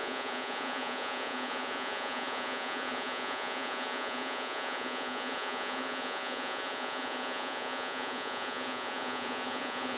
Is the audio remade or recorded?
remade